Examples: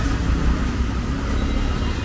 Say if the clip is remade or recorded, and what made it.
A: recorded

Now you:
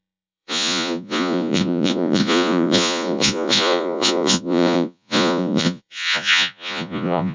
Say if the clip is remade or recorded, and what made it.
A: remade, vocoder, Vocos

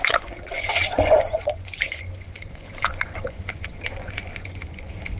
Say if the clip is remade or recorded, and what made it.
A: remade, vocoder, Vocos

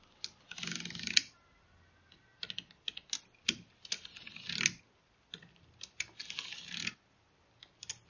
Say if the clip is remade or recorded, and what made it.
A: recorded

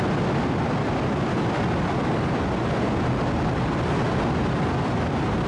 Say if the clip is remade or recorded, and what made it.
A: recorded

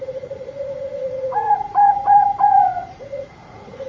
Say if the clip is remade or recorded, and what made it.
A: remade, vocoder, Vocos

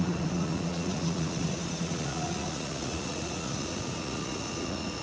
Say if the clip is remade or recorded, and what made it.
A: remade, vocoder, Vocos